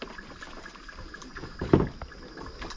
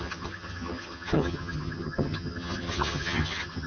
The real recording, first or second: first